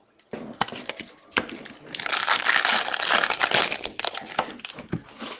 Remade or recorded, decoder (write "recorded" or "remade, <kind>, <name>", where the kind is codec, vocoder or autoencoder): recorded